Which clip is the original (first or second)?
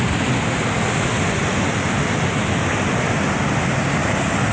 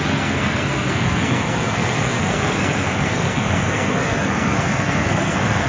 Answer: first